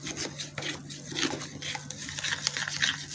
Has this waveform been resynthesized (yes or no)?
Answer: no